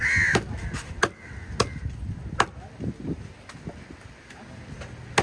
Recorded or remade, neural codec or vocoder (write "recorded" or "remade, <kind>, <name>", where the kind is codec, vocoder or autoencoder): recorded